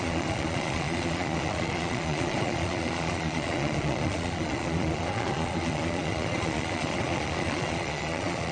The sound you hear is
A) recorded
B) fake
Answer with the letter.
B